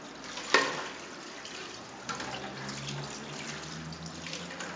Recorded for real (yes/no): yes